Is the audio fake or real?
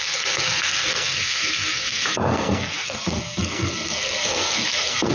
fake